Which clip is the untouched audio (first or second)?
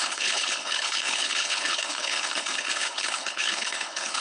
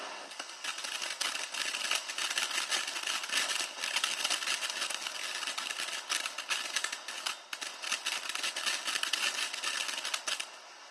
second